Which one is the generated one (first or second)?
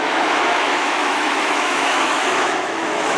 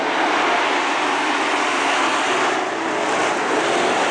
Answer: first